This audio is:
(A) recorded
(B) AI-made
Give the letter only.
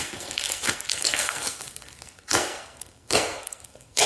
B